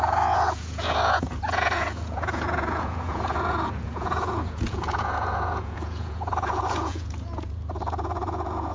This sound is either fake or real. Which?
fake